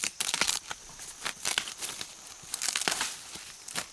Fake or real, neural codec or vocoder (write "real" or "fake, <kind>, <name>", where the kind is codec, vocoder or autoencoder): real